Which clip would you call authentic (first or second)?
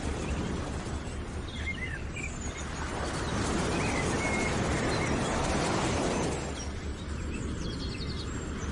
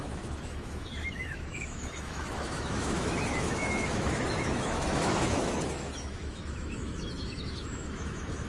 first